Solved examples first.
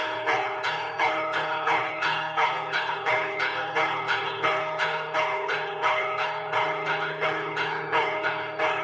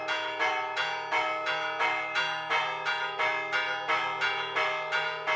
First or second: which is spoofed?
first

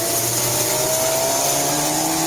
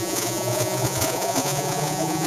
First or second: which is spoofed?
second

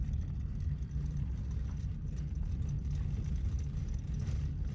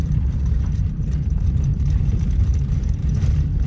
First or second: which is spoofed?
second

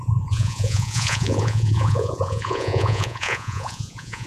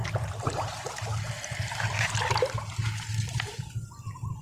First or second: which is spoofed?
first